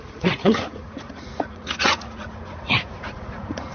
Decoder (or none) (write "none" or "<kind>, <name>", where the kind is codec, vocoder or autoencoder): vocoder, Vocos